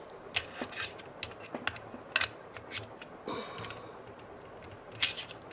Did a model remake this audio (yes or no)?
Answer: no